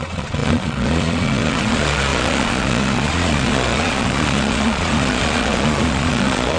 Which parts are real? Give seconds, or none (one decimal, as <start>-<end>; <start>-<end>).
none